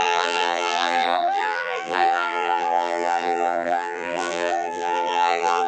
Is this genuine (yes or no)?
no